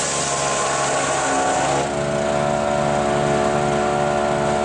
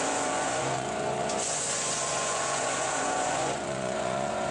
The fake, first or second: second